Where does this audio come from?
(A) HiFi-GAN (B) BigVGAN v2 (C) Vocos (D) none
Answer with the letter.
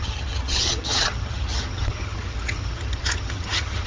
A